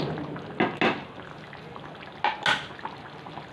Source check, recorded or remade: recorded